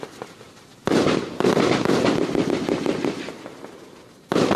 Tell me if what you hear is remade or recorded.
recorded